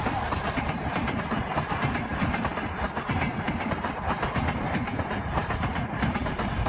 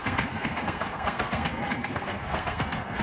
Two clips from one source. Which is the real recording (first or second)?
first